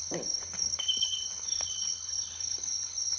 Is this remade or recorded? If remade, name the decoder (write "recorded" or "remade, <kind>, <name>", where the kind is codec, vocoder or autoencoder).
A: remade, codec, HILCodec